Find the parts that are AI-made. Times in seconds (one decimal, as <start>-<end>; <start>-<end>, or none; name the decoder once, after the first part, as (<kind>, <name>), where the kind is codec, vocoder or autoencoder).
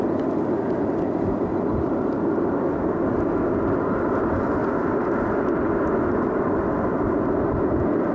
none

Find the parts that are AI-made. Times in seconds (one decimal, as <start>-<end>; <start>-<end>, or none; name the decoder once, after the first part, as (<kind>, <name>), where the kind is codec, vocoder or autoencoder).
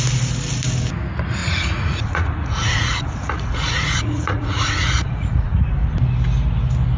1.4-5.6 (vocoder, Vocos)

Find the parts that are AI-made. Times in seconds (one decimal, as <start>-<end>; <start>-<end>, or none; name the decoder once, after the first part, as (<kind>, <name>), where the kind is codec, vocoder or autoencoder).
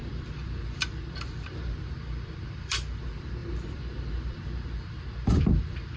0.0-6.0 (vocoder, BigVGAN v2)